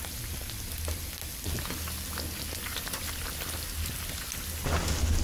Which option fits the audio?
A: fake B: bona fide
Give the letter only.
B